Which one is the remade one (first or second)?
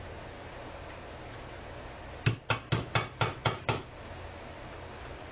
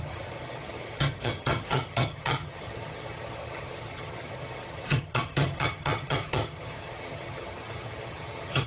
second